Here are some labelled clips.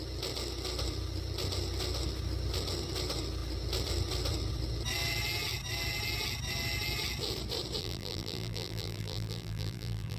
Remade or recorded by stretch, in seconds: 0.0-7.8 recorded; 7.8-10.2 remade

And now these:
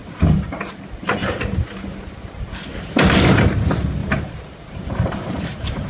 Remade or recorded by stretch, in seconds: 0.0-0.7 remade; 0.7-4.0 recorded; 4.0-5.9 remade

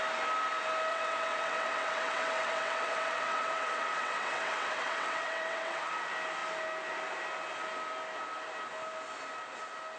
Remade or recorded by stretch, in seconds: 0.0-0.9 recorded; 0.9-5.9 remade; 5.9-10.0 recorded